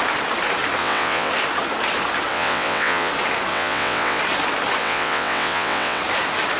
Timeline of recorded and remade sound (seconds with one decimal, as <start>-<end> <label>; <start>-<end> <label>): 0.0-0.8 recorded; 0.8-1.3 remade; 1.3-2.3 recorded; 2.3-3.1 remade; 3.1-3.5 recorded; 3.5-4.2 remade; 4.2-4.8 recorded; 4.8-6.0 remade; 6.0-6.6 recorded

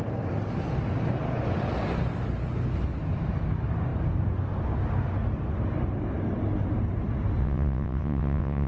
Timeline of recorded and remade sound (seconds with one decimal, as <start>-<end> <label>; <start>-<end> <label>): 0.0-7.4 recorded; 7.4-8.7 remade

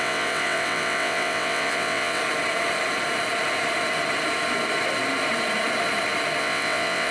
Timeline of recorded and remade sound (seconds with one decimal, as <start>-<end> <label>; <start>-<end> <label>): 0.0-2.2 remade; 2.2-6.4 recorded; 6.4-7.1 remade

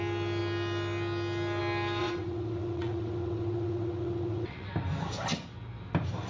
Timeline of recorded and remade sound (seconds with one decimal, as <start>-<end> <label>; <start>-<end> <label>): 0.0-2.0 recorded; 2.0-4.7 remade; 4.7-6.3 recorded

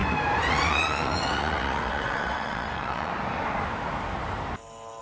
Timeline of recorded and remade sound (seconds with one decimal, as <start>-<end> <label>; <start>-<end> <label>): 0.0-0.5 recorded; 0.5-3.1 remade; 3.1-5.0 recorded

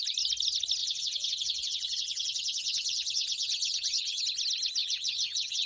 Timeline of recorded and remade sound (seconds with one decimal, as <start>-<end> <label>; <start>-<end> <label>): 0.0-0.8 recorded; 0.8-4.2 remade; 4.2-4.8 recorded; 4.8-5.7 remade

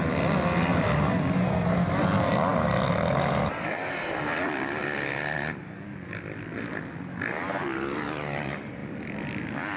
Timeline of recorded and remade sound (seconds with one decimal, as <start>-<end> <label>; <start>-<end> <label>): 0.0-9.8 recorded

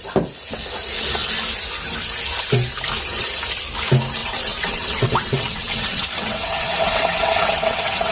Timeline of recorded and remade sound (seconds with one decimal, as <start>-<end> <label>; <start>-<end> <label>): 0.0-4.2 recorded; 4.2-8.1 remade